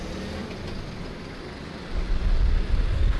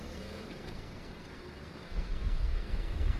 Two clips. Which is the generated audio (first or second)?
second